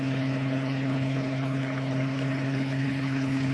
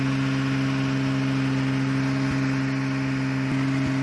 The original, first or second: second